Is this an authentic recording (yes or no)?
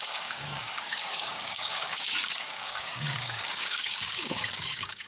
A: no